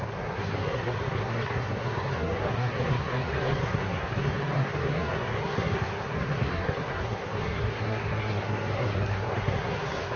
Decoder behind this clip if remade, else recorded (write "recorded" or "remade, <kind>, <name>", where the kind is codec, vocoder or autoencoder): remade, codec, SNAC